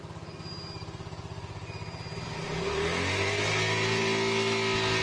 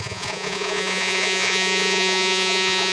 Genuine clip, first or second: first